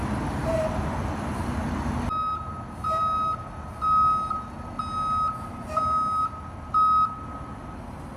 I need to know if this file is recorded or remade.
recorded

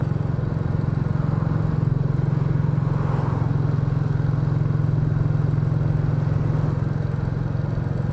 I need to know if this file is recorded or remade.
recorded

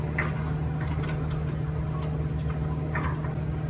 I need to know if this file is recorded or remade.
recorded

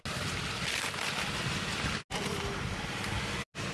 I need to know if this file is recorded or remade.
recorded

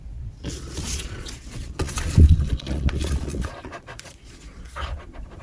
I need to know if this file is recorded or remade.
remade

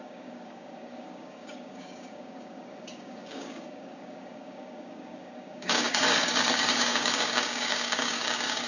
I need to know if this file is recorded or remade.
remade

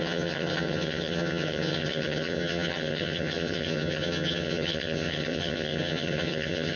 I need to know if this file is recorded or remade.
remade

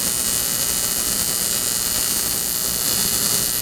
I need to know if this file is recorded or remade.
recorded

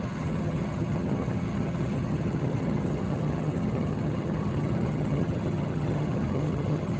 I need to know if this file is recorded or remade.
remade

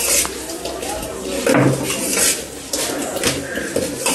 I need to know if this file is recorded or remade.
recorded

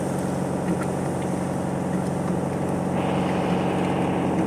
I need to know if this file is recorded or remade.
recorded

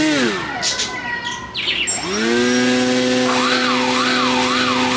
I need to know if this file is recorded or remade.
recorded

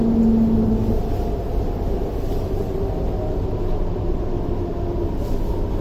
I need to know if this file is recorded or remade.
recorded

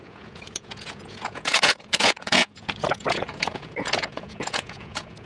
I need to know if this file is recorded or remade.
remade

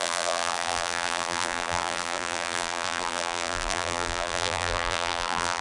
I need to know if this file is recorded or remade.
remade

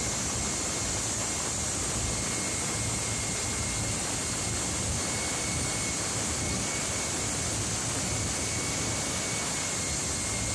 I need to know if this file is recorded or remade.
recorded